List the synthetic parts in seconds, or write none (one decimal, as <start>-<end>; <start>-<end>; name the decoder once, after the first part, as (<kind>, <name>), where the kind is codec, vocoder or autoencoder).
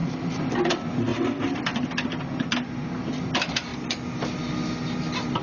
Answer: none